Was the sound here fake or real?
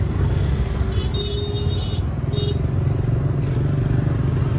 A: real